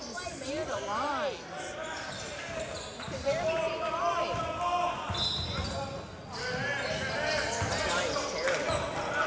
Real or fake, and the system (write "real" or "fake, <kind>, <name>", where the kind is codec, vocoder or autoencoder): real